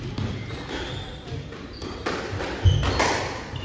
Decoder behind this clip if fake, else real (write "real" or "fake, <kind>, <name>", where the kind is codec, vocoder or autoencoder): real